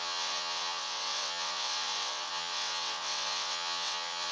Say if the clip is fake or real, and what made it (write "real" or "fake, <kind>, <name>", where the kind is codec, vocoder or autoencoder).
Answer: fake, vocoder, WaveNeXt